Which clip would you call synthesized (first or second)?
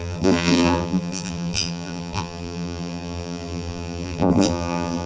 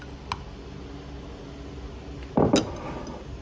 first